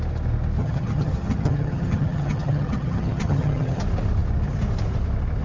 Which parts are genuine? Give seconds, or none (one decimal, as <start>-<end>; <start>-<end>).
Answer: 0.0-0.6; 3.8-5.4